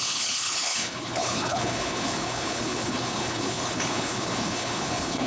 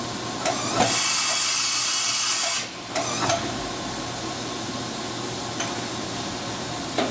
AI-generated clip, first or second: first